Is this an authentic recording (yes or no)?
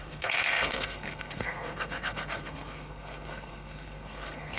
no